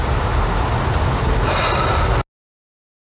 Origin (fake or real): real